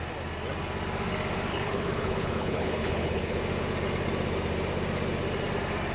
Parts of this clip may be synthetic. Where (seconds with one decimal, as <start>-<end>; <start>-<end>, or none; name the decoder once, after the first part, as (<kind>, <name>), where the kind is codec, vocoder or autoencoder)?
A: 1.5-3.4 (codec, HILCodec)

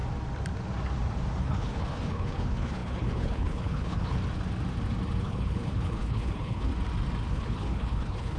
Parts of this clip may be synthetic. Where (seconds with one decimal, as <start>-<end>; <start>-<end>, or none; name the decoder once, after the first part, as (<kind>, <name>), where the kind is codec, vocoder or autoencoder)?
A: 1.4-4.2 (codec, HILCodec); 5.2-6.7; 7.3-8.4

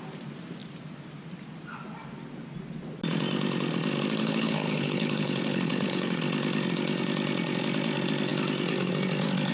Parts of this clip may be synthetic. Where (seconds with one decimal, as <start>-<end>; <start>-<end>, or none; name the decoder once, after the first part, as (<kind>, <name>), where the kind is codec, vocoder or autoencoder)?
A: 4.2-6.2 (codec, HILCodec)

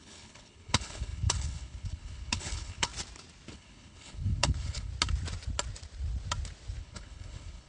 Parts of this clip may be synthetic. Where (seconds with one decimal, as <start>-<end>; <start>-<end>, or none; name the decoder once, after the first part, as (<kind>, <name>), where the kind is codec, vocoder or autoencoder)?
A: 0.0-2.9 (codec, HILCodec); 3.5-4.9; 6.8-7.7